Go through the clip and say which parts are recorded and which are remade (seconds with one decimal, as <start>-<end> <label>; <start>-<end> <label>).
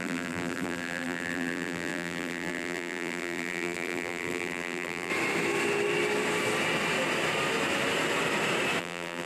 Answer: 0.0-5.1 remade; 5.1-8.8 recorded; 8.8-9.3 remade